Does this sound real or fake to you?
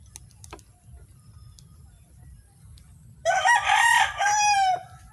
real